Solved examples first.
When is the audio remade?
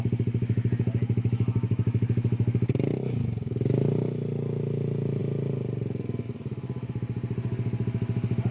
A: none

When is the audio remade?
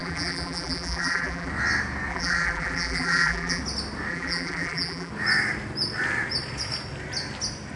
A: 0.0-1.5 (vocoder, BigVGAN v2); 2.1-3.6; 4.1-5.1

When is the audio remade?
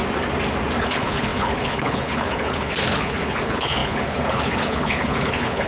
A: 0.8-5.7 (codec, HILCodec)